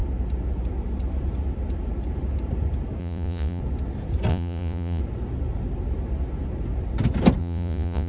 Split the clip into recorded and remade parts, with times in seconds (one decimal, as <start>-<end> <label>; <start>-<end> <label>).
0.0-3.0 recorded; 3.0-3.6 remade; 3.6-4.3 recorded; 4.3-5.0 remade; 5.0-7.4 recorded; 7.4-8.1 remade